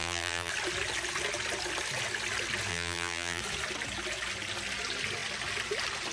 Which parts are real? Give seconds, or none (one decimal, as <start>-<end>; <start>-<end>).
0.5-2.7; 3.4-6.1